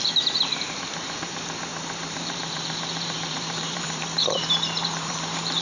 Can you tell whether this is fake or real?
fake